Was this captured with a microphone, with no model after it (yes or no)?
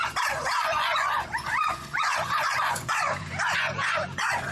no